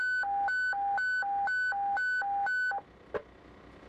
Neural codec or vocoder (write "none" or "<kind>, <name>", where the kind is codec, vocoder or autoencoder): none